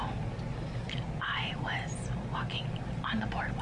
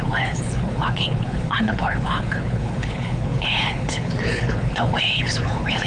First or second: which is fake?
second